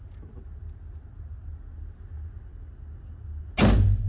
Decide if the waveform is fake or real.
real